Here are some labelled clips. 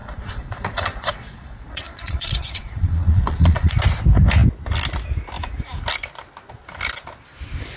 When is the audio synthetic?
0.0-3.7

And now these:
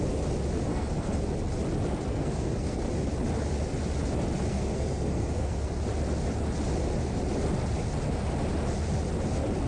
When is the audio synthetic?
0.7-1.2; 2.1-2.8; 4.5-5.7

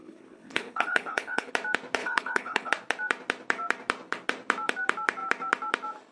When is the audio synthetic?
0.0-1.5; 2.0-2.7

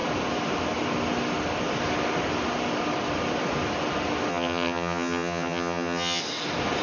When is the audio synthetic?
4.3-6.2

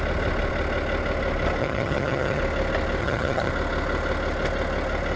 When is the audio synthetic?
1.6-2.4; 3.0-3.5

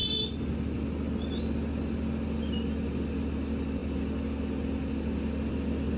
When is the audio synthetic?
none

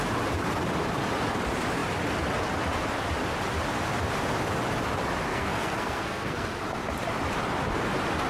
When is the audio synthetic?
5.3-6.6